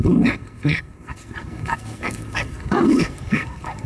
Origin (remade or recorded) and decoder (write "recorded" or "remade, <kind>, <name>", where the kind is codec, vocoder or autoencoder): remade, codec, SNAC